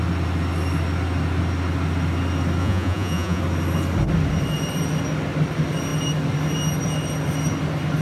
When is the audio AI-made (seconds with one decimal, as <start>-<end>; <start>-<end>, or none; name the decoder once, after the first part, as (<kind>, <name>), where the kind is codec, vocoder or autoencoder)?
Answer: 2.6-3.4 (vocoder, Vocos)